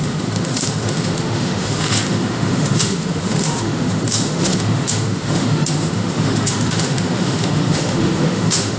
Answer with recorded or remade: remade